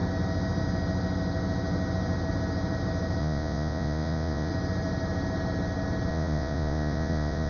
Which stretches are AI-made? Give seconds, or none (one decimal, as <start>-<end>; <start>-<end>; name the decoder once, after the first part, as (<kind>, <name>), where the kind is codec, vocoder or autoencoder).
3.2-4.5 (vocoder, Vocos); 6.1-7.5